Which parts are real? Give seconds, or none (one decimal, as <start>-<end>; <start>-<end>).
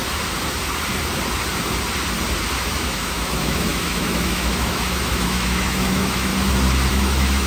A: 0.0-2.7; 6.3-6.9